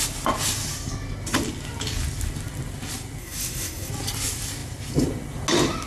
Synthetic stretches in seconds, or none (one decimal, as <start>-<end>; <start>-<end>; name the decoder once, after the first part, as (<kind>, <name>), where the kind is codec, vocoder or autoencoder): 3.2-3.9 (codec, SNAC)